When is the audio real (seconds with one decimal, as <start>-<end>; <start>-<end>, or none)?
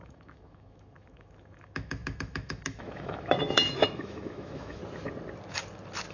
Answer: 4.8-6.1